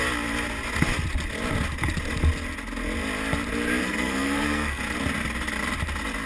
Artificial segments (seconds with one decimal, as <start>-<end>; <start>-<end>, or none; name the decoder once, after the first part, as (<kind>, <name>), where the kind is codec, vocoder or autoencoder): 3.8-4.8 (codec, SNAC)

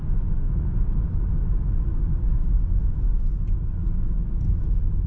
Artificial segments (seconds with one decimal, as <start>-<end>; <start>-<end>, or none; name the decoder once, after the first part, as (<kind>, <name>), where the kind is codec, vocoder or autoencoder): none

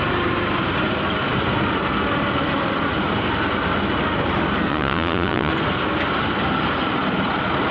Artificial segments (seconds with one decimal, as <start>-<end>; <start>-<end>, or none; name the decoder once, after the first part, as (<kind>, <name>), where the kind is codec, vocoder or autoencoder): 4.7-5.5 (vocoder, Vocos)

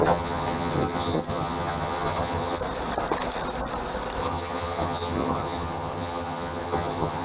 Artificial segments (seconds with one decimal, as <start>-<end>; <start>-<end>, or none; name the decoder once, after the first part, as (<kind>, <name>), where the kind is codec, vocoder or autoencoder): 0.0-2.6 (vocoder, HiFi-GAN); 4.2-7.2

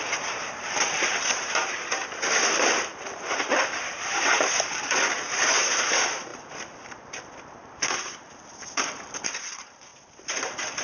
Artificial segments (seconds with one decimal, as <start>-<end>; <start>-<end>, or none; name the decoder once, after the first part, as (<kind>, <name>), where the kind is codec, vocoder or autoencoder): 0.0-6.3 (vocoder, BigVGAN v2); 8.1-10.8

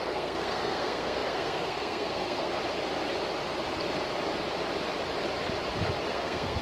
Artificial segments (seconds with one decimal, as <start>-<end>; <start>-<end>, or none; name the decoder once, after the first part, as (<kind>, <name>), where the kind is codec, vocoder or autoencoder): 0.0-2.6 (codec, SNAC); 6.1-6.6